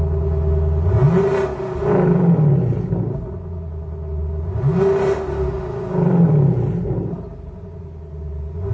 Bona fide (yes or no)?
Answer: yes